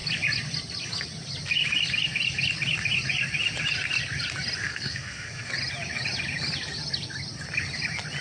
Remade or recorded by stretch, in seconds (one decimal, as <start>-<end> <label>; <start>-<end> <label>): 0.0-4.6 recorded; 4.6-5.5 remade; 5.5-8.2 recorded